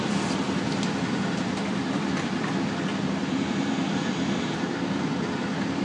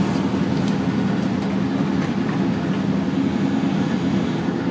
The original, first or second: second